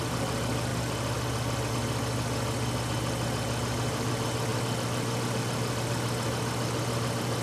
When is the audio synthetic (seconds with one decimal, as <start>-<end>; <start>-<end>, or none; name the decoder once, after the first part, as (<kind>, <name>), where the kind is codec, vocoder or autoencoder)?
none